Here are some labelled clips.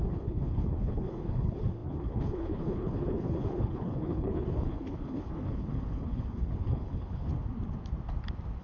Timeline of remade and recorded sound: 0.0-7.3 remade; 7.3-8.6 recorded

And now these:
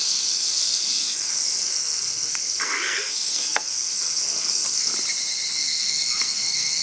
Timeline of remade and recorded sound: 0.0-4.9 remade; 4.9-5.5 recorded; 5.5-6.8 remade

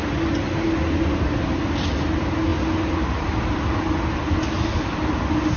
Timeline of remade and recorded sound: 0.0-5.6 recorded

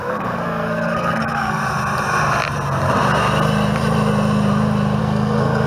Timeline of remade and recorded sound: 0.0-1.6 remade; 1.6-5.0 recorded; 5.0-5.7 remade

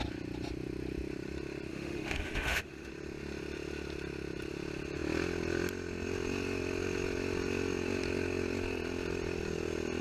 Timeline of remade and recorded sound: 0.0-1.7 recorded; 1.7-2.9 remade; 2.9-10.0 recorded